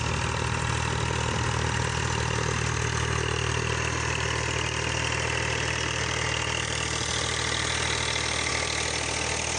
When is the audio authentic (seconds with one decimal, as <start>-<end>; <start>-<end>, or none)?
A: 0.0-9.6